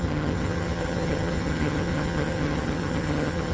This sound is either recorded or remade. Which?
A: remade